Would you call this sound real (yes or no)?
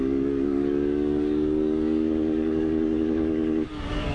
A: no